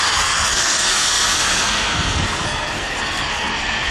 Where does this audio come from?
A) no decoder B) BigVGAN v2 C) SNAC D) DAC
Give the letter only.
C